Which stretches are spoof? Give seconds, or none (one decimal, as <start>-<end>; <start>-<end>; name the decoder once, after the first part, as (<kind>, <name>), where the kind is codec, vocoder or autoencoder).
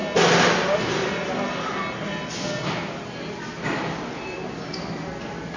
none